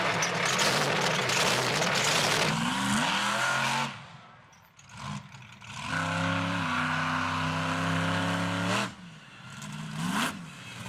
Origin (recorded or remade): recorded